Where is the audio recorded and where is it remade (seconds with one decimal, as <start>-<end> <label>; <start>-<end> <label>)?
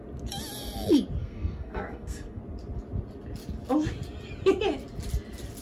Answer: 0.0-1.2 recorded; 1.2-2.4 remade; 2.4-5.6 recorded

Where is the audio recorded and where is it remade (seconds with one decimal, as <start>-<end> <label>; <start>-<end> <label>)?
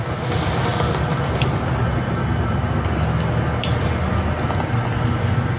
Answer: 0.0-5.6 recorded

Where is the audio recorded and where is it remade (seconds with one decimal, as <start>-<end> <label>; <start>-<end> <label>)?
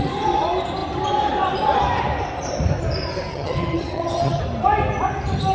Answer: 0.0-3.3 recorded; 3.3-4.4 remade; 4.4-5.5 recorded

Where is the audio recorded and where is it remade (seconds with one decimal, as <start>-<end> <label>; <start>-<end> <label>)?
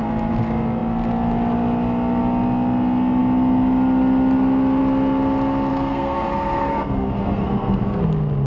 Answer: 0.0-5.7 recorded; 5.7-8.0 remade; 8.0-8.5 recorded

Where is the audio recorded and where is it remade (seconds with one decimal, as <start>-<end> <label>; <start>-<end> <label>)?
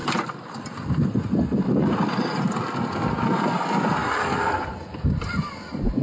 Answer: 0.0-6.0 recorded